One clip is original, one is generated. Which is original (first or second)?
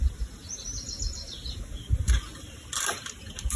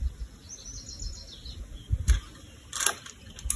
second